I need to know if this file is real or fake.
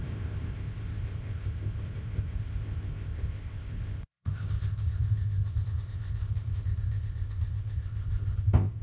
fake